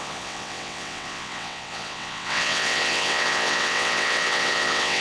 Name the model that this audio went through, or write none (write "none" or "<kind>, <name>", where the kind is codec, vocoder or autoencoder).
vocoder, WaveNeXt